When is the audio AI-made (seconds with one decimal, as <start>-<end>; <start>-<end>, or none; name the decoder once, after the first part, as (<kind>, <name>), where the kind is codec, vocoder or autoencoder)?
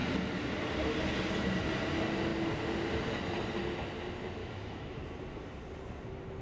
4.4-5.0 (autoencoder, DAC-VAE)